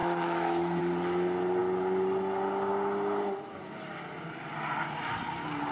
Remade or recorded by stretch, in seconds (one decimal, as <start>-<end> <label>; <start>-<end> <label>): 0.0-0.8 remade; 0.8-5.7 recorded